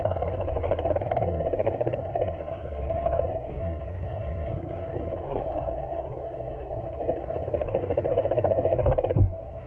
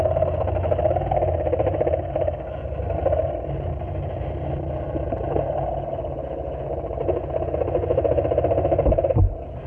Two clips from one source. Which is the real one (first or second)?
second